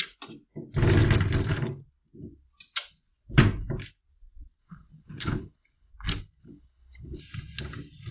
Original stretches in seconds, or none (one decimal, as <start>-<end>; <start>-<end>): 0.0-4.6; 5.9-6.4; 7.2-8.1